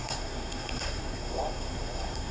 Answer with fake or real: fake